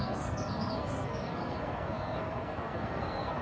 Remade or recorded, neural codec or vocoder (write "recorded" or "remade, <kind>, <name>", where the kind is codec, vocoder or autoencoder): remade, codec, SNAC